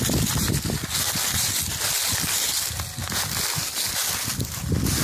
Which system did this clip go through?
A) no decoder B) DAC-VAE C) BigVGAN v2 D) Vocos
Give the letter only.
A